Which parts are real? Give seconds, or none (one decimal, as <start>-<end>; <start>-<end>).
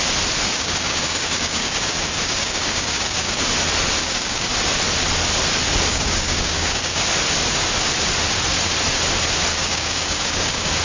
0.0-0.5; 3.4-4.0; 4.5-5.9; 7.0-9.5